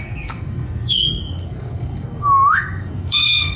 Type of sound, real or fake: fake